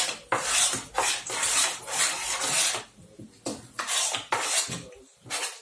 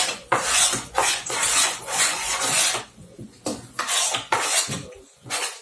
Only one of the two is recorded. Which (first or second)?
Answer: first